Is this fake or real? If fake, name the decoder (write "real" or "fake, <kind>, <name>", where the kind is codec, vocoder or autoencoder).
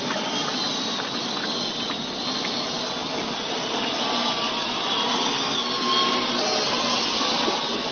real